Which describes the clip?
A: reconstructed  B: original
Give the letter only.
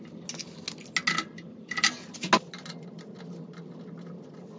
B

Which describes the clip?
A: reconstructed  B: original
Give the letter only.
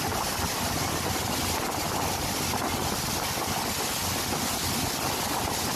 B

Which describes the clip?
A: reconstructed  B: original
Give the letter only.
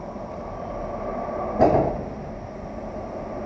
B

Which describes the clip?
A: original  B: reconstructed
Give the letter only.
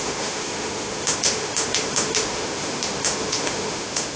B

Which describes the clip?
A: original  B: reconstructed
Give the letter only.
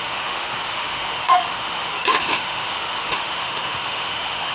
B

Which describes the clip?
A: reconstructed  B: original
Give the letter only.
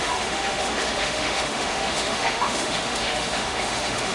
A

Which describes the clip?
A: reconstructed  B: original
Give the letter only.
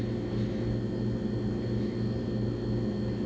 B